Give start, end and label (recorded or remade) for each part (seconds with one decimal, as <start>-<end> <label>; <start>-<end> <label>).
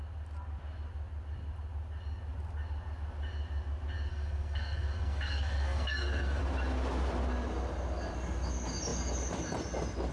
0.0-4.1 recorded; 4.1-6.4 remade; 6.4-10.1 recorded